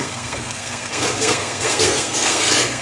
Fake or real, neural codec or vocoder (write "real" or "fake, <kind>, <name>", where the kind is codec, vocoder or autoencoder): fake, codec, SNAC